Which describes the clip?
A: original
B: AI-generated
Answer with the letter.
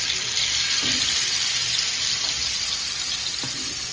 A